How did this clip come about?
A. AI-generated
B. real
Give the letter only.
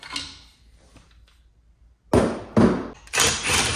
B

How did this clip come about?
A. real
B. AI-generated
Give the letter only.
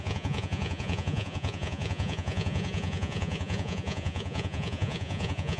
B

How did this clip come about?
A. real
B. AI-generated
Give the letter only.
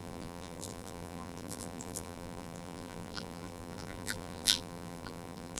B